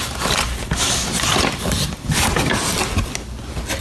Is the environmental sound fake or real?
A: real